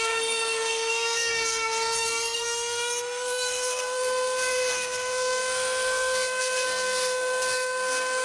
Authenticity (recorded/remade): remade